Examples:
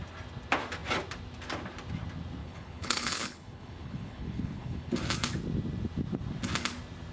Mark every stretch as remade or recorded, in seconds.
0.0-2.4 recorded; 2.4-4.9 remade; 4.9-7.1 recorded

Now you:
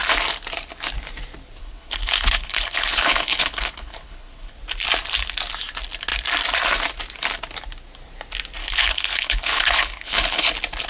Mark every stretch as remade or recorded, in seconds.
0.0-1.6 recorded; 1.6-4.5 remade; 4.5-8.6 recorded; 8.6-10.5 remade; 10.5-10.9 recorded